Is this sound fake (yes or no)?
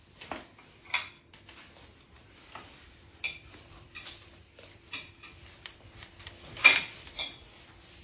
yes